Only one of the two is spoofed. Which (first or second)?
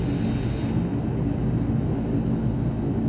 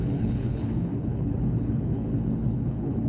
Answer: second